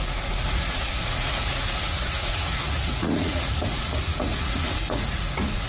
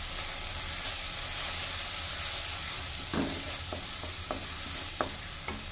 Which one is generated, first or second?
first